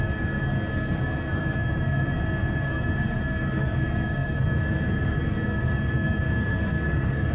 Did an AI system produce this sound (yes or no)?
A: yes